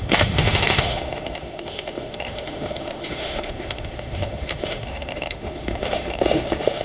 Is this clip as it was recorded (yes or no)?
no